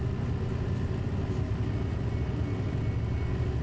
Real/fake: real